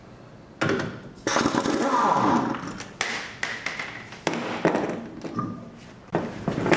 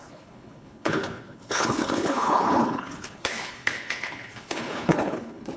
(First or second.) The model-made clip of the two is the second